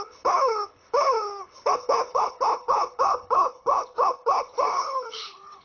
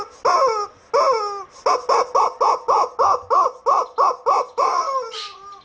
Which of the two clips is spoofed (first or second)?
first